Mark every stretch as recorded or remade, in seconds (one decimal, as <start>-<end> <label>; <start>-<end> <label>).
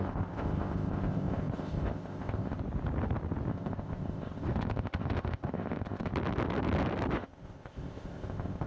0.0-2.6 remade; 2.6-3.5 recorded; 3.5-6.1 remade; 6.1-7.1 recorded; 7.1-8.7 remade